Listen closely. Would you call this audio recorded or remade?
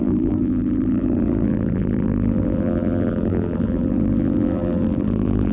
remade